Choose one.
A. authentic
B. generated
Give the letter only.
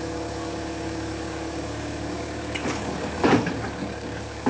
B